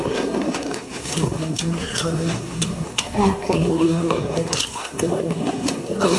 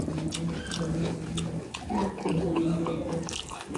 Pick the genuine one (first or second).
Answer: second